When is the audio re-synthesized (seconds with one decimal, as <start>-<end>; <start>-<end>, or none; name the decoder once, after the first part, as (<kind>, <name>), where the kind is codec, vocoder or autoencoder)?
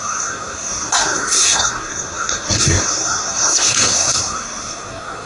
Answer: 0.0-5.3 (codec, SNAC)